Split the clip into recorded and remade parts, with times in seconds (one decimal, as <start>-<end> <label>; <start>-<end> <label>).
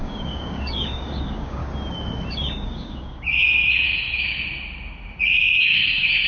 0.0-1.6 remade; 1.6-2.3 recorded; 2.3-3.6 remade; 3.6-5.2 recorded; 5.2-6.3 remade